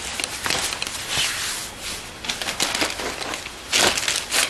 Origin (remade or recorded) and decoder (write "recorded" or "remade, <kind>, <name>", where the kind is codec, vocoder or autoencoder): recorded